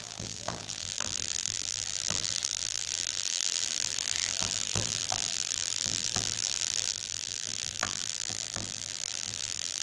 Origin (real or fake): fake